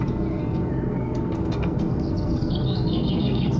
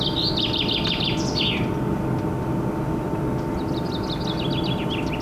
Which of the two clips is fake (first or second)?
first